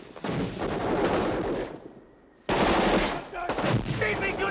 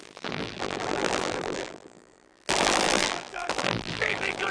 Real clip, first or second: first